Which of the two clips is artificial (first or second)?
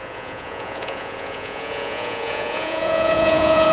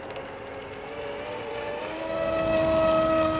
first